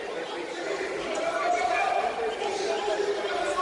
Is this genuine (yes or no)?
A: no